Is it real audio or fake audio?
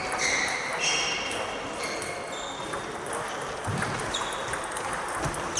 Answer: real